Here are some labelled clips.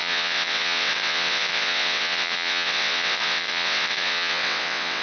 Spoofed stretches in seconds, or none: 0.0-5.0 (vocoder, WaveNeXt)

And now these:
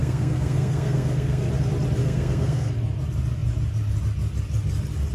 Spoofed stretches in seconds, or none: 0.0-1.5 (codec, SNAC); 2.0-2.7

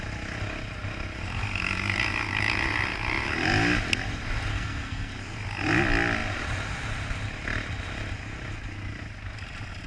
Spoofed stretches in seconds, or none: 4.5-5.1 (codec, SNAC)

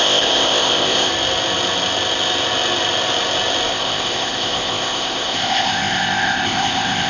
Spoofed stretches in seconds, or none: 0.0-1.1 (codec, ZipCodec); 3.7-7.1

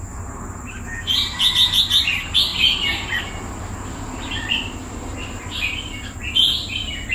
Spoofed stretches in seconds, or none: none

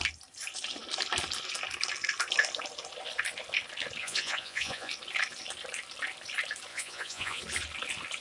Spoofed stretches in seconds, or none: 4.0-4.9 (vocoder, Vocos); 6.7-7.4

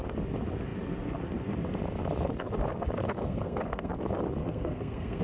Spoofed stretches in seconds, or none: 3.2-3.9 (codec, SNAC); 4.4-5.2